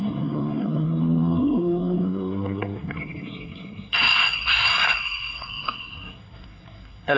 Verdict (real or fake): fake